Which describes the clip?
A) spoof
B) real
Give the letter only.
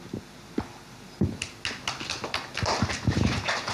B